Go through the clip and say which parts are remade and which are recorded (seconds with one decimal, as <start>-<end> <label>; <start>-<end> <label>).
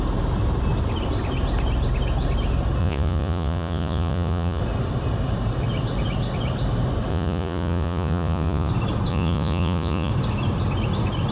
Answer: 0.0-2.8 recorded; 2.8-4.6 remade; 4.6-7.1 recorded; 7.1-8.7 remade; 8.7-9.1 recorded; 9.1-10.1 remade; 10.1-11.3 recorded